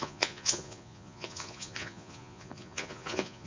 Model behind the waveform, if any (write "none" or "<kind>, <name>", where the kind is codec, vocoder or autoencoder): vocoder, Vocos